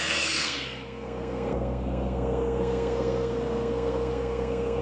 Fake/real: fake